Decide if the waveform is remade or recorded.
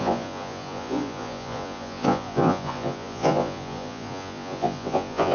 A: remade